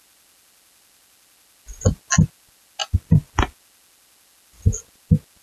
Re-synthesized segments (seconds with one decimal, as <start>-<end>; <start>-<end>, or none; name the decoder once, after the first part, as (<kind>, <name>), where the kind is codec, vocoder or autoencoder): none